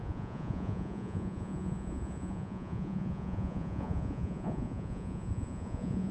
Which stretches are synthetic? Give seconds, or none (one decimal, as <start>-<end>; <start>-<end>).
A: 0.0-6.1